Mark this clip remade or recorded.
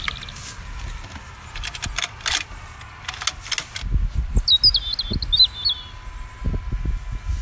recorded